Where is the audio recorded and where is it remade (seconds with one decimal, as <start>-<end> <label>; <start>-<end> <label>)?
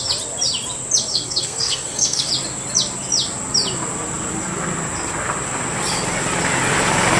0.0-1.1 recorded; 1.1-2.3 remade; 2.3-7.2 recorded